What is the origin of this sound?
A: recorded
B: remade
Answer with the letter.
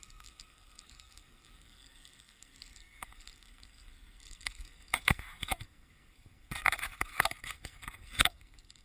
B